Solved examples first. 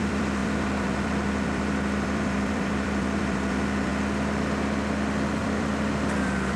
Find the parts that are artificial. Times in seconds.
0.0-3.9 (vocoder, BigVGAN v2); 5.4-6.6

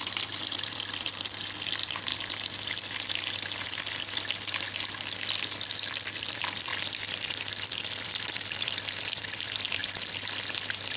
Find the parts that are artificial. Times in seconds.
0.0-2.1 (vocoder, BigVGAN v2); 6.3-6.7; 7.3-9.8

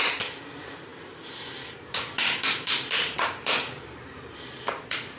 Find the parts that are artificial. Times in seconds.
0.0-5.2 (vocoder, BigVGAN v2)

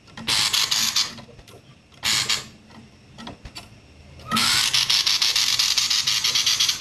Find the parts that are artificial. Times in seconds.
4.4-5.9 (vocoder, BigVGAN v2)

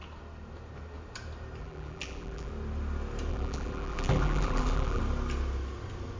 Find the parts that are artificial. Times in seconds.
1.6-2.5 (vocoder, BigVGAN v2); 3.3-5.0

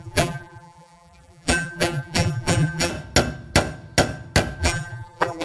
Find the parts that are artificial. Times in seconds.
0.0-2.9 (vocoder, BigVGAN v2); 4.6-5.4

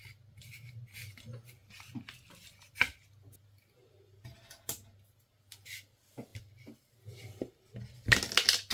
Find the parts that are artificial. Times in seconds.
0.0-0.7 (vocoder, BigVGAN v2); 6.3-7.5